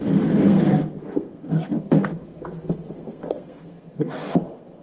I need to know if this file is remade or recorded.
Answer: remade